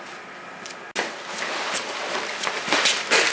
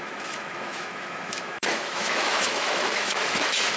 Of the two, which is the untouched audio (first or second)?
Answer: first